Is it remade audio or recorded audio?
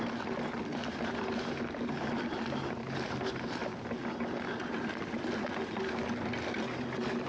recorded